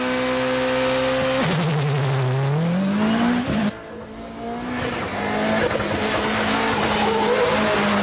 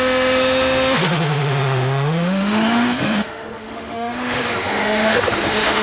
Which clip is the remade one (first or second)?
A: second